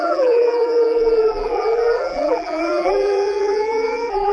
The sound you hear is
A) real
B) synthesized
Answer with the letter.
B